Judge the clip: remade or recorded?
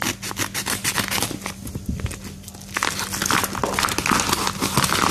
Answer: recorded